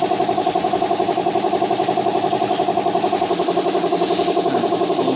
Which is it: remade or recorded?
recorded